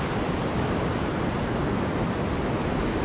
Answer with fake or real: real